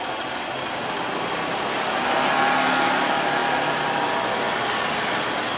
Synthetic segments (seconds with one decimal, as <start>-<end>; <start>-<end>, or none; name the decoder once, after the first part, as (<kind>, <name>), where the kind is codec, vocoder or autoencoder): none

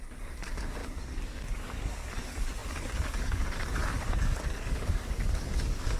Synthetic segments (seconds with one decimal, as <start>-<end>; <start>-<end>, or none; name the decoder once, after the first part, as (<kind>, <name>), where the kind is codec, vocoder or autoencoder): 0.0-6.0 (codec, DAC)

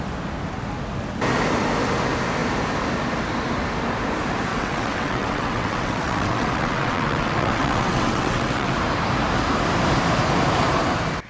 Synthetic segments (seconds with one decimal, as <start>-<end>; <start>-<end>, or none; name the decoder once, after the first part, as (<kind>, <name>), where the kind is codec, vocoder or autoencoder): 4.5-8.7 (vocoder, WaveNeXt)